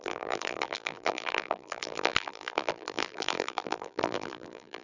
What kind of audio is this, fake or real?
fake